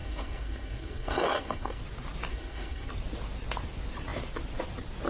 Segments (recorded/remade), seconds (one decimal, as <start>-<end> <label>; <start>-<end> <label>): 0.0-1.8 remade; 1.8-2.3 recorded; 2.3-2.9 remade; 2.9-5.1 recorded